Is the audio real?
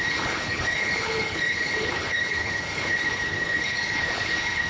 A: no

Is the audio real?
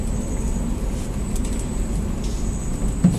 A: yes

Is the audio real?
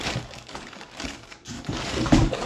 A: no